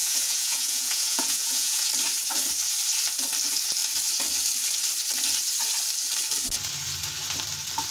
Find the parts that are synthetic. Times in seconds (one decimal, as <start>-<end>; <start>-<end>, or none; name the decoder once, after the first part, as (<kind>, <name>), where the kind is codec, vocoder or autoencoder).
0.0-1.9 (vocoder, Vocos)